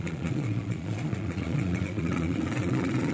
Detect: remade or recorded remade